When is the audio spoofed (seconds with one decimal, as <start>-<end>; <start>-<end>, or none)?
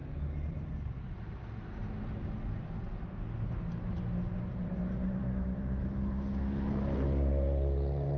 5.2-5.9